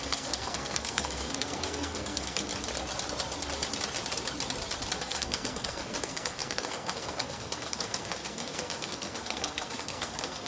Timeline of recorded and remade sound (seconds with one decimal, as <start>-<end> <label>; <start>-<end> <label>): 0.0-2.5 remade; 2.5-5.0 recorded; 5.0-10.5 remade